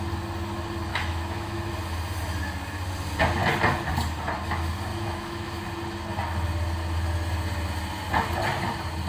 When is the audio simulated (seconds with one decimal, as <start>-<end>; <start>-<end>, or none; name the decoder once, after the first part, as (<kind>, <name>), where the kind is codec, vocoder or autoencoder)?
0.9-1.7 (autoencoder, DAC-VAE); 4.9-5.6